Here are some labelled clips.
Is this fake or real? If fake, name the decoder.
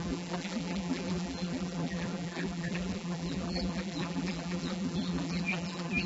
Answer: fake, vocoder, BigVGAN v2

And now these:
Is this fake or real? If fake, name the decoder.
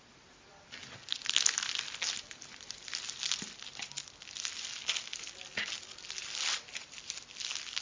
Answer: real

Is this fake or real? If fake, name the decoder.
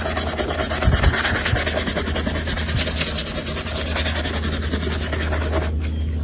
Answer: real